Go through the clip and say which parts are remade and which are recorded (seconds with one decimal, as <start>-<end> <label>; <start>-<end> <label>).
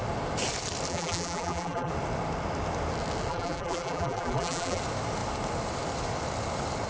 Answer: 0.0-0.9 recorded; 0.9-1.9 remade; 1.9-3.3 recorded; 3.3-4.8 remade; 4.8-6.9 recorded